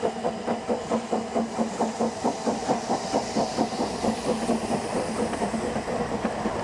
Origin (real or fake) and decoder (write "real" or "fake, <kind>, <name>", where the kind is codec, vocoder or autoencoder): real